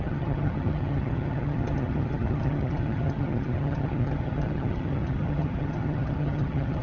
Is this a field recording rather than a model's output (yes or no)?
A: no